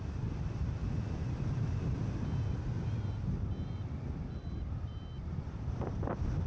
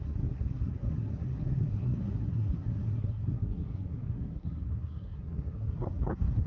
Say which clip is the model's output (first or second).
second